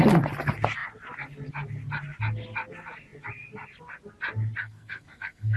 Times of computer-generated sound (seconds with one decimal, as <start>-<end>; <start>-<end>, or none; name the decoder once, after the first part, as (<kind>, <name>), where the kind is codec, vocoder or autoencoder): 4.6-5.6 (codec, SNAC)